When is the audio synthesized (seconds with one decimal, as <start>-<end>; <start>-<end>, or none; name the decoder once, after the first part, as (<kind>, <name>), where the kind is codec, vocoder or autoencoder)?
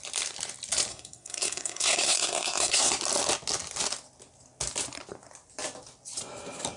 0.9-2.9 (codec, SNAC)